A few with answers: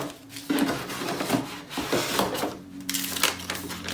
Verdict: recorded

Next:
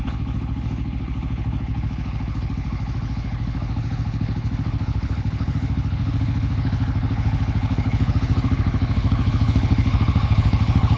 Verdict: remade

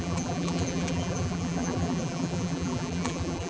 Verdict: remade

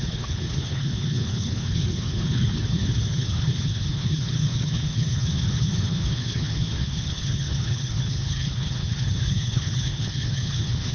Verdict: remade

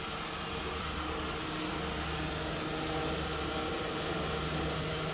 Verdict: recorded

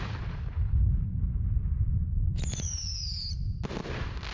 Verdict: recorded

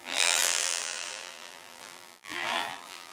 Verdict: remade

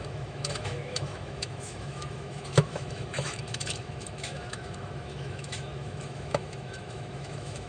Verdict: remade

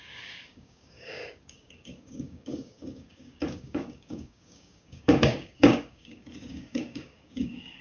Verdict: remade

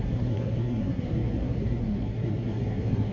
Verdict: remade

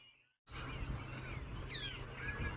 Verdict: recorded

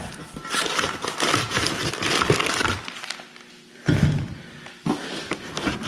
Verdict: recorded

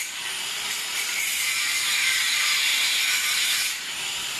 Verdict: remade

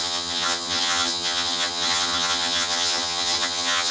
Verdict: remade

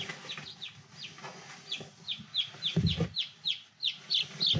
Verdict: recorded